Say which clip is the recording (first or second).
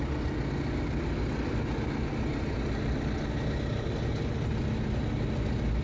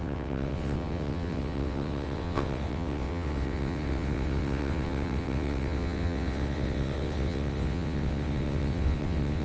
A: first